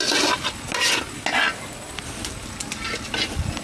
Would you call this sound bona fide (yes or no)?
yes